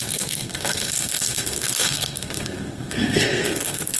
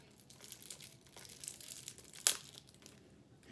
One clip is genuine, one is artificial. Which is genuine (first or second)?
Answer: second